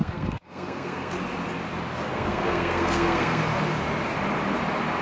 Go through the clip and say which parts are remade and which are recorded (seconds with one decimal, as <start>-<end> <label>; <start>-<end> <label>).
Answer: 0.0-1.1 remade; 1.1-2.1 recorded; 2.1-3.4 remade; 3.4-5.0 recorded